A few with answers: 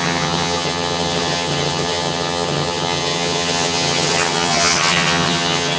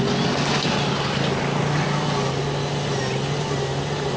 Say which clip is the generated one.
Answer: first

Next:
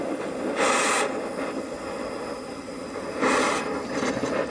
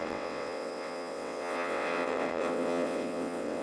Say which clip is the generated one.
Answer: second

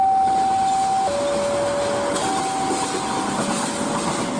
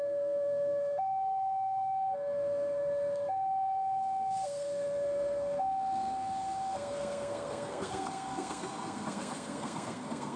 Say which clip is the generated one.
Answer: second